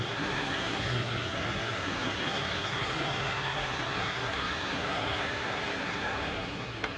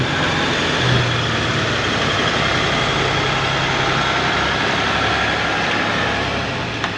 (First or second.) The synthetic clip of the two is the first